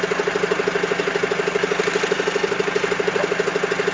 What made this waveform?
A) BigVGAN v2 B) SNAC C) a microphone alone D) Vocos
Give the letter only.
C